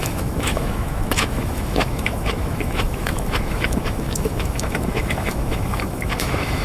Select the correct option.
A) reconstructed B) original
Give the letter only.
A